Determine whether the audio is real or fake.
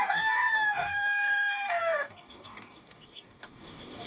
fake